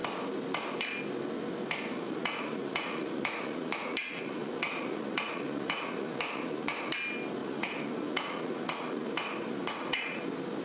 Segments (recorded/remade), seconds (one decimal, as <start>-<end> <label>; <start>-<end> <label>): 0.0-1.9 recorded; 1.9-6.9 remade; 6.9-7.4 recorded; 7.4-9.1 remade; 9.1-9.5 recorded; 9.5-10.2 remade; 10.2-10.6 recorded